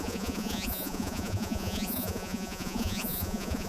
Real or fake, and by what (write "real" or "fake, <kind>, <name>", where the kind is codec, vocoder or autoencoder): fake, vocoder, Vocos